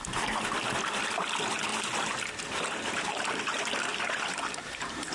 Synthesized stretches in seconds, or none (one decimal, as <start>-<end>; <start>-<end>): 1.7-3.4; 3.9-5.1